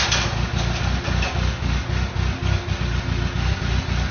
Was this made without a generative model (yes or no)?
yes